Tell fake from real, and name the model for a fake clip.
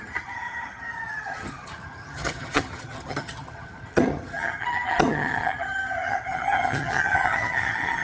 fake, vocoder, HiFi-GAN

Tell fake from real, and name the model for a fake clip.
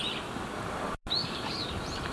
real